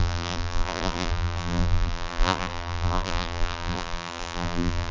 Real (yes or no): no